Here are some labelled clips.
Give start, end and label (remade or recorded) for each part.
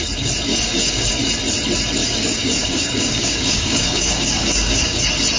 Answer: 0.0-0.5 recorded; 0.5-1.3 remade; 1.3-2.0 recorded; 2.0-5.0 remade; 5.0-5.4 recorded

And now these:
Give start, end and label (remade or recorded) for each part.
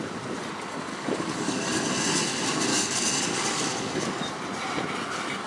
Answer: 0.0-0.9 recorded; 0.9-1.7 remade; 1.7-2.7 recorded; 2.7-4.2 remade; 4.2-5.5 recorded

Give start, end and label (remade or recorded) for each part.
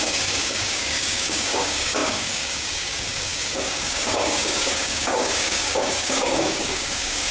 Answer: 0.0-7.3 remade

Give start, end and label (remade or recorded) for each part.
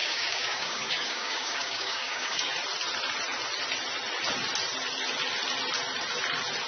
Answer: 0.0-2.5 remade; 2.5-6.7 recorded